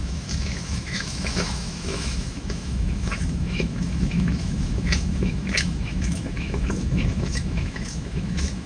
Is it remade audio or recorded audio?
remade